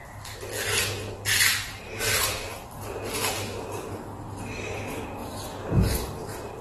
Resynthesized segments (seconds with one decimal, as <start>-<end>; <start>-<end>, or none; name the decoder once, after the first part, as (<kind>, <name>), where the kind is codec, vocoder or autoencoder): none